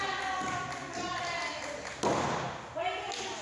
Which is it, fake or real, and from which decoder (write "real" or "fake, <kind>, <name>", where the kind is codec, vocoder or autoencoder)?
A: real